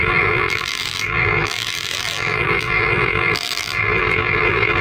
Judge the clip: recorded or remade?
remade